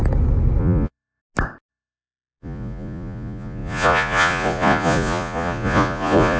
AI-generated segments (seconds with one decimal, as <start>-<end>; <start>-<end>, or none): 0.6-1.2; 1.7-6.4